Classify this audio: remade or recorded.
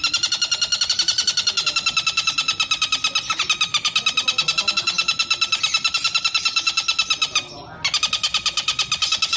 recorded